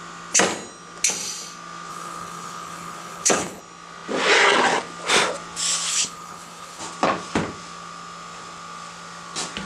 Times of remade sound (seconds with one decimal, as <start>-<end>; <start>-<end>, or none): 1.9-3.6; 5.9-6.8